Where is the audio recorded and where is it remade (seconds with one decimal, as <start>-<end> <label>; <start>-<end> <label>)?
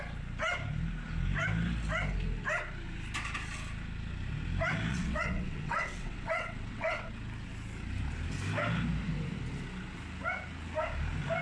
0.0-4.9 recorded; 4.9-7.1 remade; 7.1-11.4 recorded